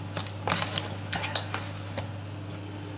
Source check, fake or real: real